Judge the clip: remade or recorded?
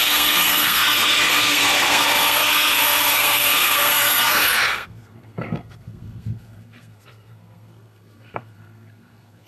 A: remade